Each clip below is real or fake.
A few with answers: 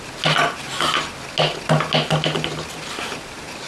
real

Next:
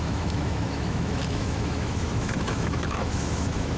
fake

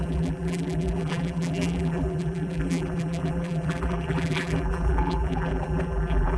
fake